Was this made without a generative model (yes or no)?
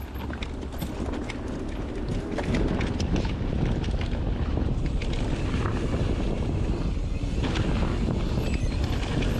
yes